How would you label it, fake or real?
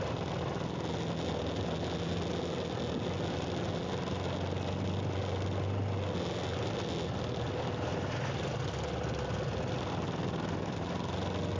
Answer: real